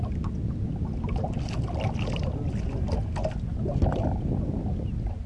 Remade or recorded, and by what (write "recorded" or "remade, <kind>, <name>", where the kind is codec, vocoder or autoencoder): recorded